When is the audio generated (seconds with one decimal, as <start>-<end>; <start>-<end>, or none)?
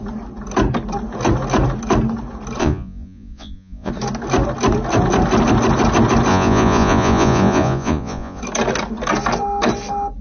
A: 2.6-3.9; 6.3-8.4